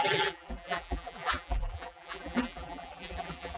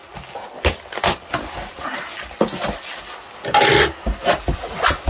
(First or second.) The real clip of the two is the second